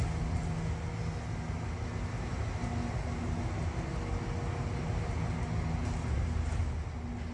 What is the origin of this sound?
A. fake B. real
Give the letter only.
B